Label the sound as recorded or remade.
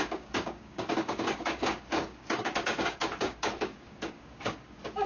remade